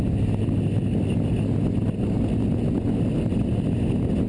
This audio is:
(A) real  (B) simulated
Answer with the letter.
A